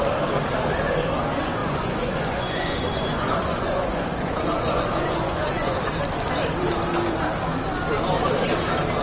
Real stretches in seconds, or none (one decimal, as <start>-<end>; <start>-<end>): 0.0-1.6; 5.8-9.0